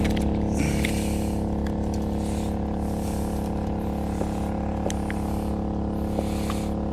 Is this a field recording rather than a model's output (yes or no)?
yes